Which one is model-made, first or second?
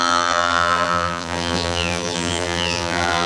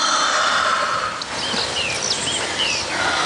first